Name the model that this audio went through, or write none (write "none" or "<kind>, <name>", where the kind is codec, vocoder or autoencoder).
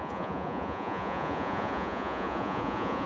vocoder, Vocos